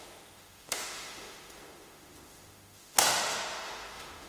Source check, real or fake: fake